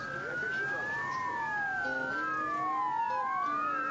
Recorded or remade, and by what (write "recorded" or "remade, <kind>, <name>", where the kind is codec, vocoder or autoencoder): recorded